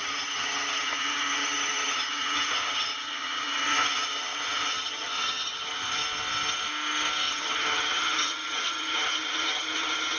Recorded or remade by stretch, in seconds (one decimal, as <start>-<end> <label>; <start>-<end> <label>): 0.0-6.0 remade; 6.0-7.3 recorded; 7.3-10.2 remade